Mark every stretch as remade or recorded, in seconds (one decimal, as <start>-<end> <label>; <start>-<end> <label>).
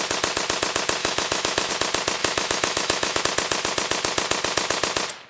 0.0-1.0 recorded; 1.0-1.7 remade; 1.7-2.2 recorded; 2.2-3.2 remade; 3.2-5.3 recorded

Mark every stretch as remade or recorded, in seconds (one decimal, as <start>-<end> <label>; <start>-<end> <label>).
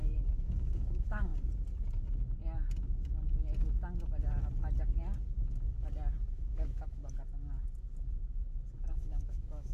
0.0-1.3 remade; 1.3-6.3 recorded; 6.3-7.0 remade; 7.0-8.9 recorded; 8.9-9.7 remade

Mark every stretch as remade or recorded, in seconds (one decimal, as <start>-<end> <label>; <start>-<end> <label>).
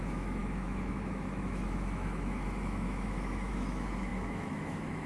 0.0-5.1 remade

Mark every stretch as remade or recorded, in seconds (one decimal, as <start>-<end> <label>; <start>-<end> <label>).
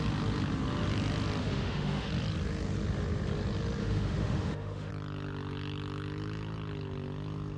0.0-1.4 recorded; 1.4-2.1 remade; 2.1-3.8 recorded; 3.8-4.9 remade; 4.9-7.6 recorded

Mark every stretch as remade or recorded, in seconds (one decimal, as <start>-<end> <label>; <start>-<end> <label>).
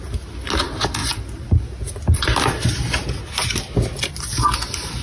0.0-5.0 recorded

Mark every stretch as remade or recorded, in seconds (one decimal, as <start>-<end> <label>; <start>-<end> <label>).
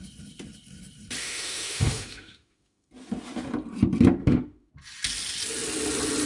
0.0-1.2 recorded; 1.2-2.9 remade; 2.9-4.2 recorded; 4.2-4.7 remade; 4.7-6.3 recorded